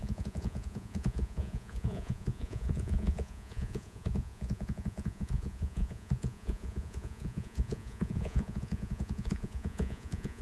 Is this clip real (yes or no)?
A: no